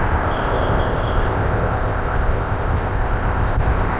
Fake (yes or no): yes